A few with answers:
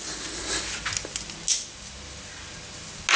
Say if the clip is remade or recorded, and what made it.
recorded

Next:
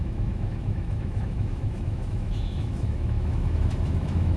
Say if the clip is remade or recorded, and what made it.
remade, autoencoder, DAC-VAE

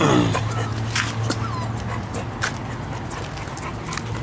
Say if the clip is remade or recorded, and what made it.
recorded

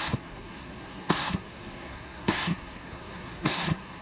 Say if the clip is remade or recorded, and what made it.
remade, codec, SNAC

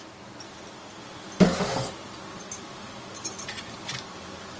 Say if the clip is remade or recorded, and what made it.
recorded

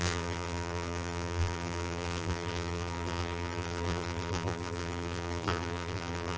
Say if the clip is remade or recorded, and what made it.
remade, vocoder, BigVGAN v2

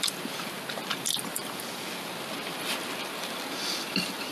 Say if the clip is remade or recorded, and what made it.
recorded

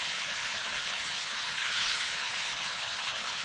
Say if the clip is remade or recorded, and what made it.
remade, codec, HILCodec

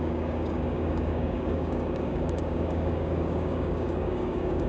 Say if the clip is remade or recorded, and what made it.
remade, codec, DAC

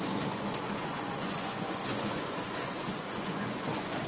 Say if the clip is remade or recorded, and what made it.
remade, vocoder, Vocos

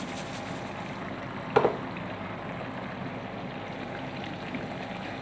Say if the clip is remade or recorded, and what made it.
recorded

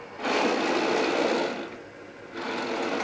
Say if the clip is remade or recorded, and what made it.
recorded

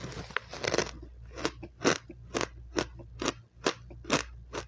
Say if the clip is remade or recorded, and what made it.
recorded